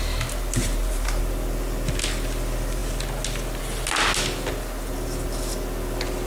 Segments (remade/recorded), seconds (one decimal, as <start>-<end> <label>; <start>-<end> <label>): 0.0-0.6 recorded; 0.6-1.2 remade; 1.2-6.3 recorded